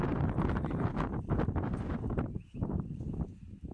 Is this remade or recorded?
remade